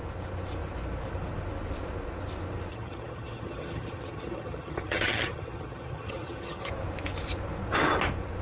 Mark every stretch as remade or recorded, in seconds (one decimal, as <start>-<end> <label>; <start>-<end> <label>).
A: 0.0-2.7 recorded; 2.7-6.7 remade; 6.7-8.4 recorded